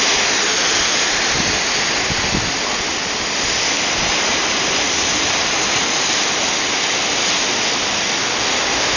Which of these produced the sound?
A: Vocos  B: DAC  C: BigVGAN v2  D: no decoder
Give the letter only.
D